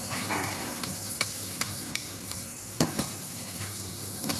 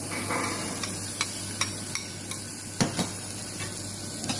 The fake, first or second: first